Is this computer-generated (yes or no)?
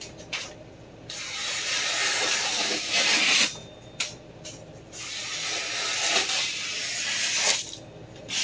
no